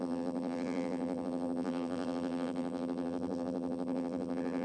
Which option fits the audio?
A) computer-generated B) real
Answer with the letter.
A